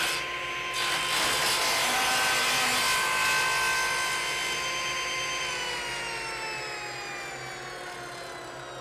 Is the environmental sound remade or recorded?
recorded